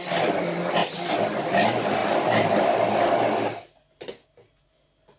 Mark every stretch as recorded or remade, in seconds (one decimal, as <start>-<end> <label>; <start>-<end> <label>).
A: 0.0-5.2 recorded